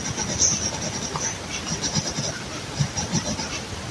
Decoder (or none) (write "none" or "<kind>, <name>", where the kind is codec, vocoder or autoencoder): none